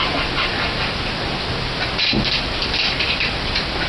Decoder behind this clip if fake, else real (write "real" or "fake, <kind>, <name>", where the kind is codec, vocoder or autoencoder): real